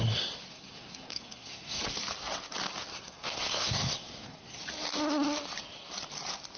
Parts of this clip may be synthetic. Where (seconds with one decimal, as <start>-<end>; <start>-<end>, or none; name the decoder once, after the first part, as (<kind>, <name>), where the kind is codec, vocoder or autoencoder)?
0.5-1.8 (codec, SNAC); 2.9-4.6